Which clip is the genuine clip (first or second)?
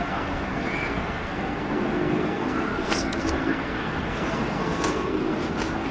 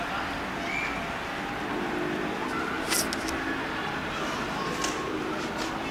second